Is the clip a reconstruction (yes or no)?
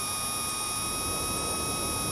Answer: no